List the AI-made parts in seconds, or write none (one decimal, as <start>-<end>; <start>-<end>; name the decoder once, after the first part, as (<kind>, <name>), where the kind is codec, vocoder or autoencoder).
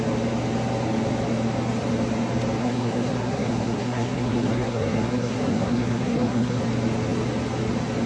2.6-6.6 (codec, SNAC)